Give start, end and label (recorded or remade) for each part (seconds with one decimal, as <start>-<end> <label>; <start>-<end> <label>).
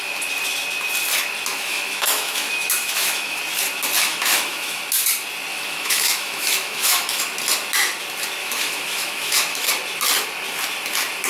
0.0-1.5 recorded; 1.5-3.4 remade; 3.4-4.0 recorded; 4.0-4.8 remade; 4.8-5.5 recorded; 5.5-7.2 remade; 7.2-8.4 recorded; 8.4-9.7 remade; 9.7-11.3 recorded